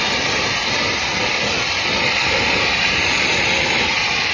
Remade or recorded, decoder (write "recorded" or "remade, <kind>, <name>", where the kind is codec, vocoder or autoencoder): recorded